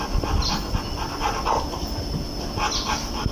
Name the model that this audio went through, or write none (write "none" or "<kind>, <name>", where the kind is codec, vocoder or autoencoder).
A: none